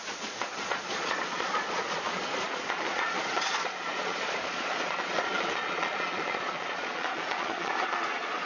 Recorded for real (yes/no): no